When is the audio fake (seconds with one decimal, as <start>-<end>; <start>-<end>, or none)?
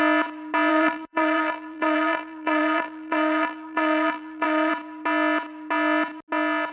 0.7-4.7